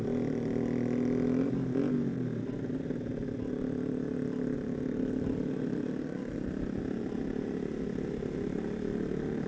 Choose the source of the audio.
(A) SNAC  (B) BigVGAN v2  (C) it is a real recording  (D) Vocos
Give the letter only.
C